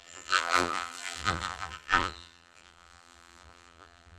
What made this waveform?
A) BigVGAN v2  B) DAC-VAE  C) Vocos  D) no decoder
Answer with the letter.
A